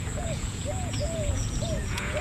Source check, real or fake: fake